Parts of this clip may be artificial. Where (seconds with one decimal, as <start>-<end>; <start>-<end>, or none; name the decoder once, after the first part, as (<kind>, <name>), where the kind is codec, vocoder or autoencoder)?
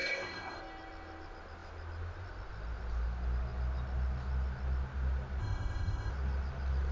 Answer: 0.0-0.6 (codec, ZipCodec); 5.4-6.1